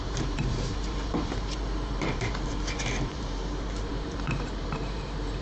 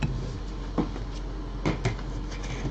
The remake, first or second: first